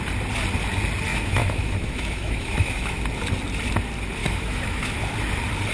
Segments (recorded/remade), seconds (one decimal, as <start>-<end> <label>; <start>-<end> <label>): 0.0-1.1 recorded; 1.1-3.0 remade; 3.0-4.2 recorded; 4.2-5.0 remade; 5.0-5.7 recorded

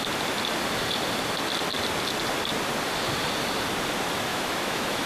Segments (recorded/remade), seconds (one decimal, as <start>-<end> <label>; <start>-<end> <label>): 0.0-4.3 recorded; 4.3-5.1 remade

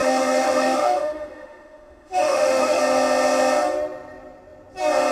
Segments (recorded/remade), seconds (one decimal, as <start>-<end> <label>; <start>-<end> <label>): 0.0-2.8 remade; 2.8-5.1 recorded

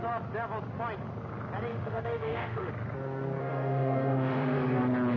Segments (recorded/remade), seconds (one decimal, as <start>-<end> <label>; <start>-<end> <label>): 0.0-1.7 recorded; 1.7-2.7 remade; 2.7-3.4 recorded; 3.4-4.8 remade; 4.8-5.2 recorded

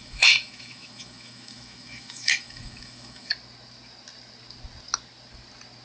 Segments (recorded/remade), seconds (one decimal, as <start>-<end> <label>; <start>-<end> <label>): 0.0-3.3 remade; 3.3-5.8 recorded

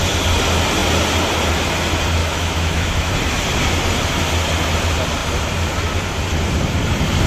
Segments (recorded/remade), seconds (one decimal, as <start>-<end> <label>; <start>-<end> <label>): 0.0-2.2 recorded; 2.2-3.1 remade; 3.1-7.3 recorded